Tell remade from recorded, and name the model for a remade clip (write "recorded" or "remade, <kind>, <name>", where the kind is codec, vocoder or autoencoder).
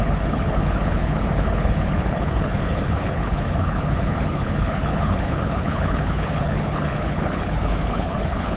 remade, codec, HILCodec